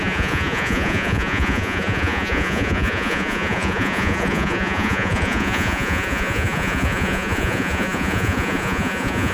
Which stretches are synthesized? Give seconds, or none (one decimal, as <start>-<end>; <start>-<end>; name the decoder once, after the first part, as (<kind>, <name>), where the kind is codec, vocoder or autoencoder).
0.0-9.3 (vocoder, Vocos)